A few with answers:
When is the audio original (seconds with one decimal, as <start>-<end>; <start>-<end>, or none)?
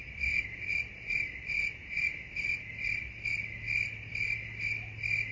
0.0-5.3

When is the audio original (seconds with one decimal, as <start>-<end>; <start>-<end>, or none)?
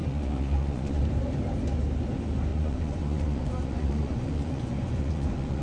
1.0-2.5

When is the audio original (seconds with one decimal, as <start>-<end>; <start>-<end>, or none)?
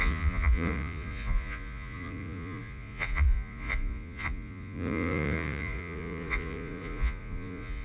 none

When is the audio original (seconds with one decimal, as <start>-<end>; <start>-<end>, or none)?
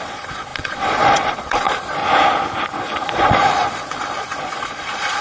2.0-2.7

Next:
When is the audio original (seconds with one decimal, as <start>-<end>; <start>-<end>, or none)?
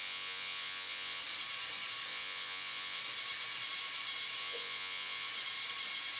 1.2-2.1; 3.0-4.4; 5.3-6.2